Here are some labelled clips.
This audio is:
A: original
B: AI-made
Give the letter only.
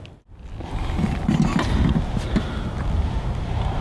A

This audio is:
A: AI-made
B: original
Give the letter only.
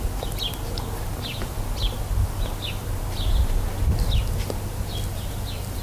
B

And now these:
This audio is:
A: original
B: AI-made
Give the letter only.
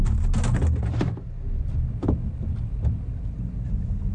A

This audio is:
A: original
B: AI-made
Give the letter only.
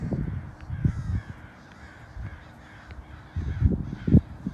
A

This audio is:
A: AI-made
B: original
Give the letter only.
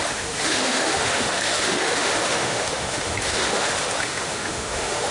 A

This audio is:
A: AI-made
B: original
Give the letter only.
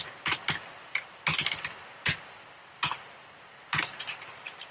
B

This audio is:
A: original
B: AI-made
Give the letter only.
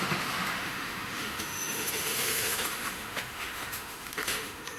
B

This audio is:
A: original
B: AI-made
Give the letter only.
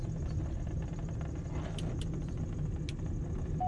A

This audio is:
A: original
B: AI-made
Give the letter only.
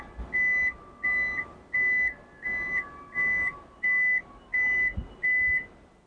A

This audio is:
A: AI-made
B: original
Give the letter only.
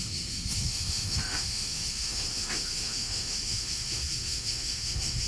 A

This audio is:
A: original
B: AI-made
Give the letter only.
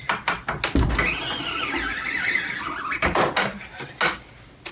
A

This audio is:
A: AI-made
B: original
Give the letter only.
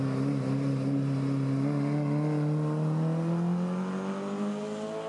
B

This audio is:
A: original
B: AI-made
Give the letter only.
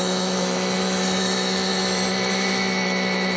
B